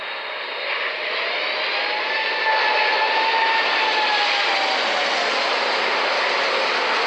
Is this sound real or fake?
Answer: real